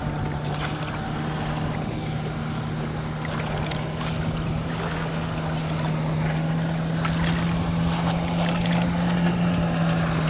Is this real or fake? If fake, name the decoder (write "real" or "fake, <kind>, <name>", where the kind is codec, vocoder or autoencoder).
real